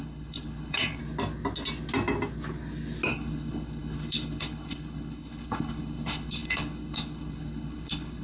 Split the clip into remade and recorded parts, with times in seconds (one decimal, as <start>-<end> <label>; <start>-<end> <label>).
0.0-1.0 remade; 1.0-3.1 recorded; 3.1-8.2 remade